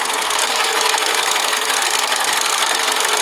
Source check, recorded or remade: remade